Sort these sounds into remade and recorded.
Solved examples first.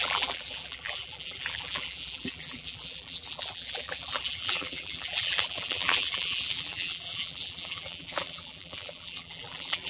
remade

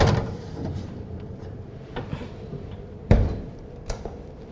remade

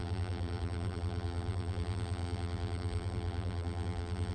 remade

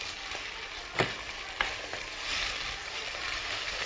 recorded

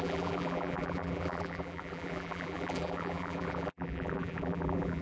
remade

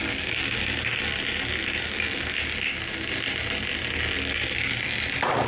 recorded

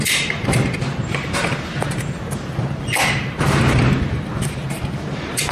remade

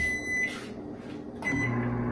recorded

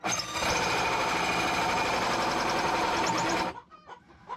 recorded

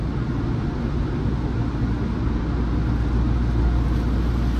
recorded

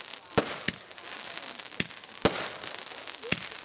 recorded